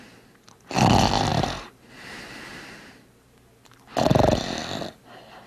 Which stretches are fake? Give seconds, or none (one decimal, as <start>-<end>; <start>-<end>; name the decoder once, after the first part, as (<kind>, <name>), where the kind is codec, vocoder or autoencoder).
none